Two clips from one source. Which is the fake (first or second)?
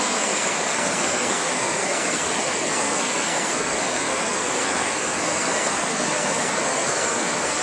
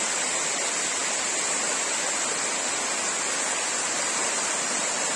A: first